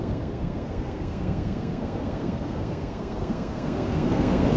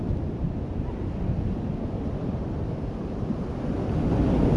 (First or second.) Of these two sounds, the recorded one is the second